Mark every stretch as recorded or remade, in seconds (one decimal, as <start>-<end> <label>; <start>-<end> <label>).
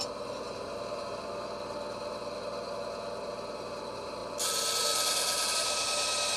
0.0-6.4 recorded